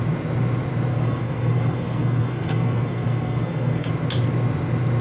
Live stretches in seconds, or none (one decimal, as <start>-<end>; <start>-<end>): 0.0-0.9; 3.9-5.0